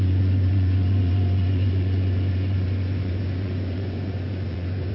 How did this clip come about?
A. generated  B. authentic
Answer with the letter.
A